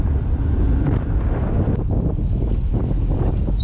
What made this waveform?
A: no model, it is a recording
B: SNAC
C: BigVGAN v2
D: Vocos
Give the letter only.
C